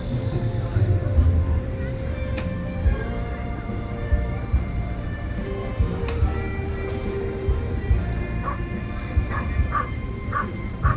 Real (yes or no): no